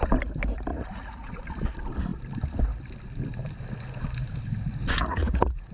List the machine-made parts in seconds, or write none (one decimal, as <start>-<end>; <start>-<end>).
0.7-1.4; 4.8-5.7